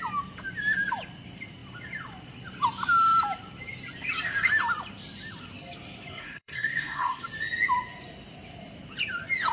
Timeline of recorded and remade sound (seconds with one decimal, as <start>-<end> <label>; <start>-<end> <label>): 0.0-6.2 recorded; 6.2-7.2 remade; 7.2-9.5 recorded